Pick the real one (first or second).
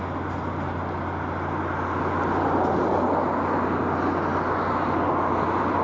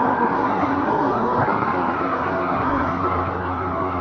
first